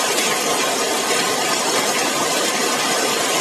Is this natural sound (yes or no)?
yes